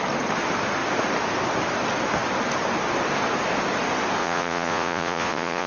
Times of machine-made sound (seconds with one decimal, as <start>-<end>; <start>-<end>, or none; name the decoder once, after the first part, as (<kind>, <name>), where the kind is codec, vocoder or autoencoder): 4.2-5.7 (vocoder, Vocos)